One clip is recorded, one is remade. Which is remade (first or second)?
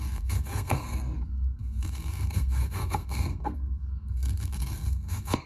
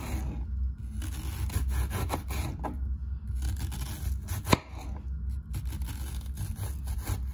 first